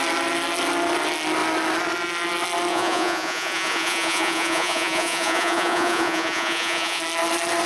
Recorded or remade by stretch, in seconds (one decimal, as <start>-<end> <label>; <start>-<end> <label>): 0.0-2.7 recorded; 2.7-7.0 remade; 7.0-7.7 recorded